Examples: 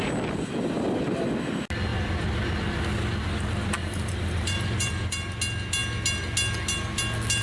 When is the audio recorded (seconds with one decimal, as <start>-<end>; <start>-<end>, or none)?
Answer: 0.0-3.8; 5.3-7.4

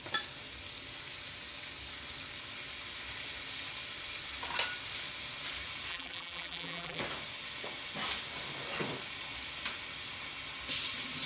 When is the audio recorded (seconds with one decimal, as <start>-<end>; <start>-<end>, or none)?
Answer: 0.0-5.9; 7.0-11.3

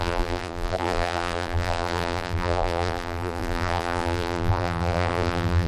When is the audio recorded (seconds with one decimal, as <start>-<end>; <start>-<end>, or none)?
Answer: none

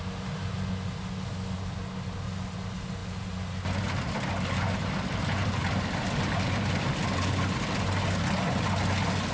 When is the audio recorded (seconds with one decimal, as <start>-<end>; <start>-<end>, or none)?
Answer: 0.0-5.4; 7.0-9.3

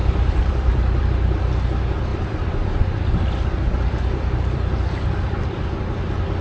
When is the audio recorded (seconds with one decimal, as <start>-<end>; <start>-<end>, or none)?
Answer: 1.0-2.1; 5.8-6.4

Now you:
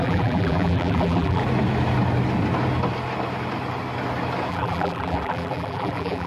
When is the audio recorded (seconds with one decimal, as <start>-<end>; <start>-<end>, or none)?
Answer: 1.4-4.5

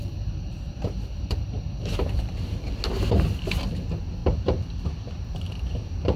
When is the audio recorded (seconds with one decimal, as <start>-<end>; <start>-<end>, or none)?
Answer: 2.8-4.2